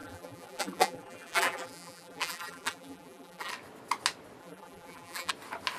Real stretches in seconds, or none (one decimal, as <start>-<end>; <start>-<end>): 3.5-4.4; 5.3-5.8